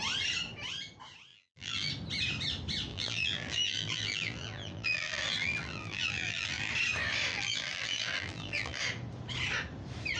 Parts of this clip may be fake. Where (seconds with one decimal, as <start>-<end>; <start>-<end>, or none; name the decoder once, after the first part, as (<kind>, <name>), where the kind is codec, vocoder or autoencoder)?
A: 1.3-1.9 (vocoder, BigVGAN v2); 2.9-6.7; 7.3-8.8